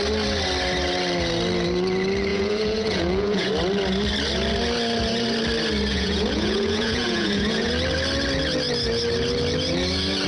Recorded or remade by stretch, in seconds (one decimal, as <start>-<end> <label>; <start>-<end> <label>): 0.0-2.3 recorded; 2.3-3.5 remade; 3.5-5.9 recorded; 5.9-7.7 remade; 7.7-10.3 recorded